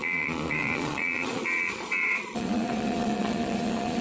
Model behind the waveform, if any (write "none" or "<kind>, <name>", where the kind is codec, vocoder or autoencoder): vocoder, Vocos